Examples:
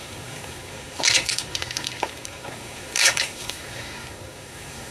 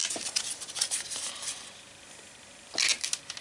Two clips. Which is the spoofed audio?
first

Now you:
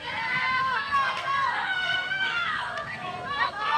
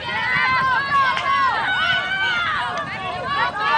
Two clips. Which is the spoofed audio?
first